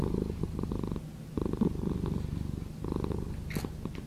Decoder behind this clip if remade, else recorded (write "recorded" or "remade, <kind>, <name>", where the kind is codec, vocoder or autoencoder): recorded